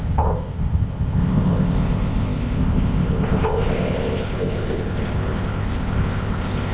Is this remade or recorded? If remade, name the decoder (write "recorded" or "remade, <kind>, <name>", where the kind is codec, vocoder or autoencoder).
remade, codec, ZipCodec